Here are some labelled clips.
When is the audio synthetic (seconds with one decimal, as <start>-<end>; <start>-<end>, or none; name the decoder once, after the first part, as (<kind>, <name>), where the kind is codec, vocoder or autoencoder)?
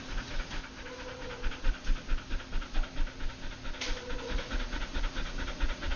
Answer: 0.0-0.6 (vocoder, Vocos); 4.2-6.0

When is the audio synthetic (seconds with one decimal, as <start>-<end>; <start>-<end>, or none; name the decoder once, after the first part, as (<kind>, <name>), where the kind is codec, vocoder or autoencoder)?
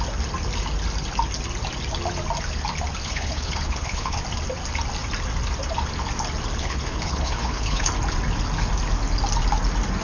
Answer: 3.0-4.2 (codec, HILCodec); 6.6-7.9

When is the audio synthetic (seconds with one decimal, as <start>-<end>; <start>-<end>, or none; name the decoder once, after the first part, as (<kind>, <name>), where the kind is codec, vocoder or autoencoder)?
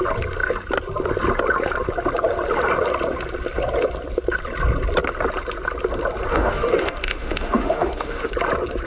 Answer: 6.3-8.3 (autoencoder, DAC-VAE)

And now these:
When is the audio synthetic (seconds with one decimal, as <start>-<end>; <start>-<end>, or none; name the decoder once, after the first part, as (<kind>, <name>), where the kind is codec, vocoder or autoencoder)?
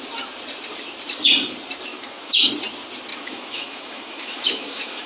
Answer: 1.9-2.5 (autoencoder, DAC-VAE); 3.1-5.1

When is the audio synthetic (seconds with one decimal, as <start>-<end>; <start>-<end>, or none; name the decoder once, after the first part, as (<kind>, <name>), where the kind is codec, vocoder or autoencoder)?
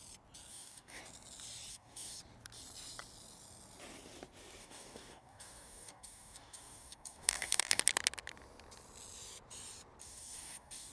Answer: 0.5-1.0 (codec, DAC); 1.7-2.2; 4.6-7.8; 10.0-10.9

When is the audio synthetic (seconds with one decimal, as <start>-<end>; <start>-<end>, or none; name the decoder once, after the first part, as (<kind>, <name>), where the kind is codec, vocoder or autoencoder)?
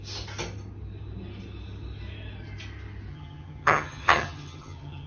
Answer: 3.1-5.1 (vocoder, HiFi-GAN)